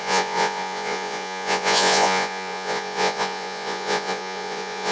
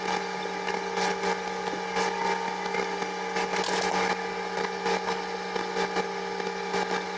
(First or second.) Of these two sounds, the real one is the second